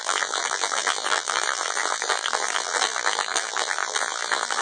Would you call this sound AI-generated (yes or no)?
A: yes